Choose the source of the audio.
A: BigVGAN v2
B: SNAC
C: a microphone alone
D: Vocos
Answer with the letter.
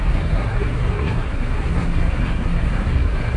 B